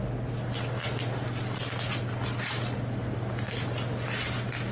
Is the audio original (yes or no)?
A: yes